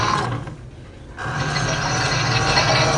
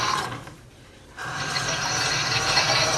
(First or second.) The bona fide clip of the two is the first